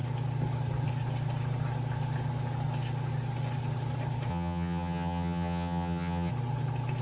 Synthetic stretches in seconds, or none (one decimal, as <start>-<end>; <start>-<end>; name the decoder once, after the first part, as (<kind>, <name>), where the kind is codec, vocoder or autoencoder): 4.3-6.3 (vocoder, HiFi-GAN)